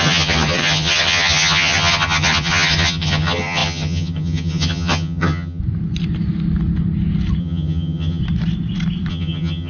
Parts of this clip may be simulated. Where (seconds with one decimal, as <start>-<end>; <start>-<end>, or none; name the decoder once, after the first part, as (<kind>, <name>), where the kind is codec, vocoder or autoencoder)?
0.0-5.6 (vocoder, HiFi-GAN); 7.4-8.2; 9.1-9.7